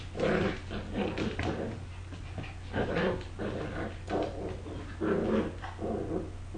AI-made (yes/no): no